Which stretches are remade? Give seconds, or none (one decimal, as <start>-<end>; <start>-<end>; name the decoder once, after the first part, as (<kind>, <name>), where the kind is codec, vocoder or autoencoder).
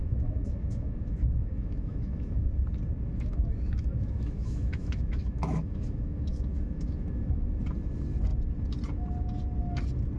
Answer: 0.0-2.5 (autoencoder, DAC-VAE); 3.1-7.6